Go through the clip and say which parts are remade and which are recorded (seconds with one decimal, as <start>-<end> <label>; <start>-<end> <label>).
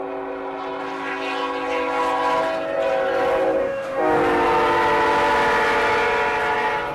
0.0-3.6 recorded; 3.6-4.2 remade; 4.2-6.9 recorded